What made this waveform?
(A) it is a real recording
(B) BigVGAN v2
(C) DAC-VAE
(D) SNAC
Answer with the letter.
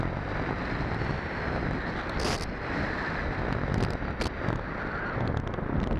A